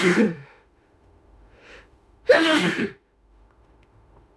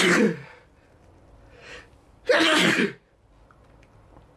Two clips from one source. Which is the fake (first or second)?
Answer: first